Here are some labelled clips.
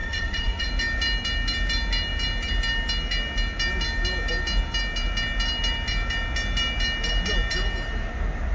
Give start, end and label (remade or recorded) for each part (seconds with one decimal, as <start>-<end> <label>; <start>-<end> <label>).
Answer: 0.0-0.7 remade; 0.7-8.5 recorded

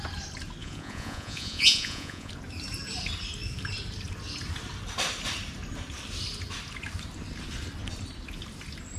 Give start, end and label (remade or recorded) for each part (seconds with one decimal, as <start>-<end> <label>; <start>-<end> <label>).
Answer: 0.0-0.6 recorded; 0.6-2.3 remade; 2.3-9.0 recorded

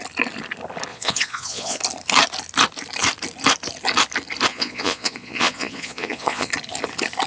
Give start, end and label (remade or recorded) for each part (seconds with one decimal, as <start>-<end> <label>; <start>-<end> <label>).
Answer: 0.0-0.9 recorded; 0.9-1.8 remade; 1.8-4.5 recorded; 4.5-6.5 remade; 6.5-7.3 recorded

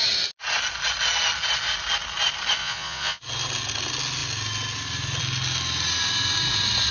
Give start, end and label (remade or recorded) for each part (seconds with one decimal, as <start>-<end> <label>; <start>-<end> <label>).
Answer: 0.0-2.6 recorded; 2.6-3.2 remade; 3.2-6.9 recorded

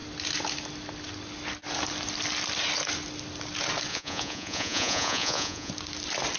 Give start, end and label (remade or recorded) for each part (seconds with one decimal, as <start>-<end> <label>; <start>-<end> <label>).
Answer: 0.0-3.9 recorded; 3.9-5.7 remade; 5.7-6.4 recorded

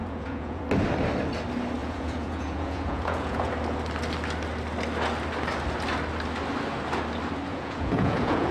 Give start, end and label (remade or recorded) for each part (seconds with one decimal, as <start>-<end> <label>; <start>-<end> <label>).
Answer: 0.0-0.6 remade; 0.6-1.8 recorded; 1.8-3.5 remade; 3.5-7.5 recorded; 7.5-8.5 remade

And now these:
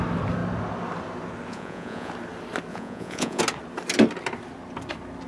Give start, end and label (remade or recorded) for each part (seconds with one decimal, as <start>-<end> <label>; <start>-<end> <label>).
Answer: 0.0-1.5 recorded; 1.5-2.1 remade; 2.1-2.7 recorded; 2.7-3.4 remade; 3.4-5.3 recorded

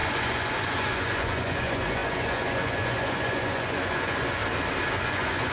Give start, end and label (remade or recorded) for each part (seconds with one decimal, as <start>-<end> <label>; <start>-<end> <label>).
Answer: 0.0-4.4 remade; 4.4-4.9 recorded; 4.9-5.5 remade